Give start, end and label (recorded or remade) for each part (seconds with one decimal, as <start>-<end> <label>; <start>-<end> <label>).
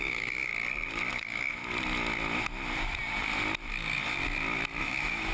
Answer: 0.0-0.5 remade; 0.5-1.1 recorded; 1.1-1.6 remade; 1.6-4.8 recorded; 4.8-5.3 remade